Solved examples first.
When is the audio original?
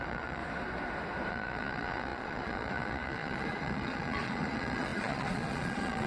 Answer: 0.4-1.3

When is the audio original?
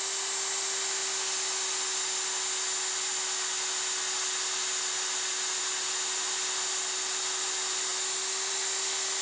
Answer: 0.0-9.2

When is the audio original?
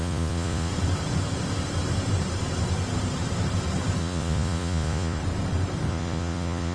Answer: 0.7-4.0; 5.2-5.9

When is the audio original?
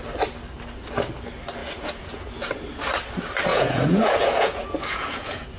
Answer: 0.0-1.6; 2.3-3.5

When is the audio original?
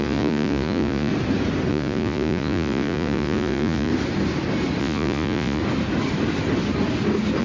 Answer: 1.1-1.7; 3.9-4.8; 5.6-7.4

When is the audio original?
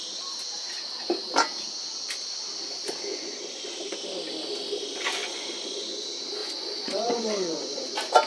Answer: 0.0-3.1; 3.7-5.2; 6.0-6.4; 7.8-8.3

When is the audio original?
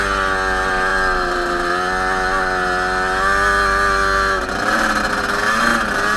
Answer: 0.0-6.2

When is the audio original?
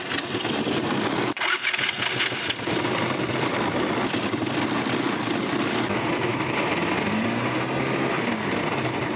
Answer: 0.0-9.2